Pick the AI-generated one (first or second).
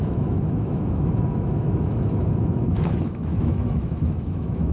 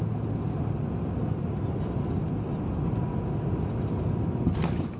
first